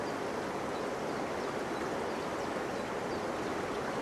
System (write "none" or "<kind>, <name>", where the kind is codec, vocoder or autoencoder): none